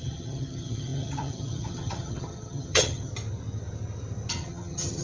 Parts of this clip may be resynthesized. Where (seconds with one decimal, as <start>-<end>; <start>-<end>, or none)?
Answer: 0.0-3.1; 4.3-5.0